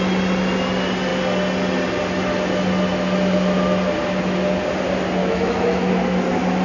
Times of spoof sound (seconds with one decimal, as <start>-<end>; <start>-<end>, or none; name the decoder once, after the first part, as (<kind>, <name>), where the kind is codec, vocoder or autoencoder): 5.2-5.9 (autoencoder, DAC-VAE)